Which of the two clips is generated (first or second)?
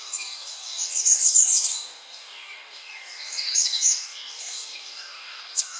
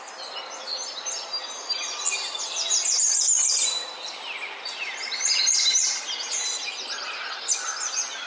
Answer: first